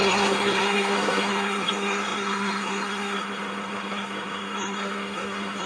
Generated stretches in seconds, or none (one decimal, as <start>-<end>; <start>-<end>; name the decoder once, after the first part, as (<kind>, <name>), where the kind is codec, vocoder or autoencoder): 0.0-5.7 (codec, SNAC)